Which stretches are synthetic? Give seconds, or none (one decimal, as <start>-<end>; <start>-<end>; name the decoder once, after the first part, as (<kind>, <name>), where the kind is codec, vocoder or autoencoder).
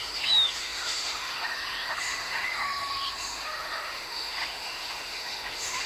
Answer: 0.0-5.9 (autoencoder, DAC-VAE)